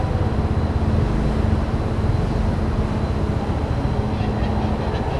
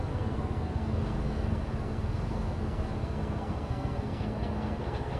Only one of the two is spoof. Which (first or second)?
second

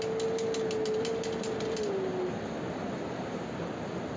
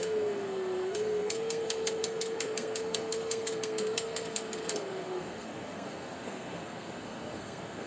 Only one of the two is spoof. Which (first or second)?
second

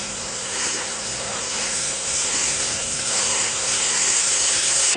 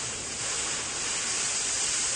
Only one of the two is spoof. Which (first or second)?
first